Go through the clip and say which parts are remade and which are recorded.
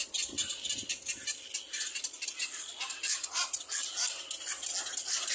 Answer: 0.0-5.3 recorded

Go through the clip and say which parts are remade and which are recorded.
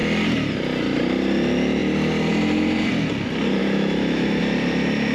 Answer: 0.0-3.6 recorded; 3.6-4.4 remade; 4.4-5.1 recorded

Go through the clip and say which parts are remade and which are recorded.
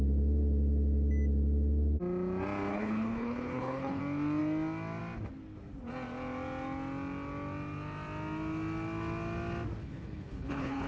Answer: 0.0-2.7 recorded; 2.7-4.0 remade; 4.0-9.8 recorded; 9.8-10.9 remade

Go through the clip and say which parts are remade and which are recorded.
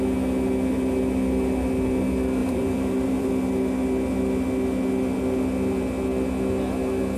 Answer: 0.0-2.4 recorded; 2.4-3.3 remade; 3.3-7.2 recorded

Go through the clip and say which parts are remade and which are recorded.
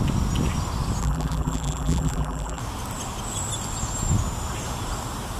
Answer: 0.0-1.0 recorded; 1.0-2.6 remade; 2.6-5.4 recorded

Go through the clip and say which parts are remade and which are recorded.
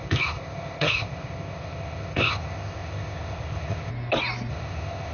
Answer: 0.0-3.9 remade; 3.9-4.5 recorded; 4.5-5.1 remade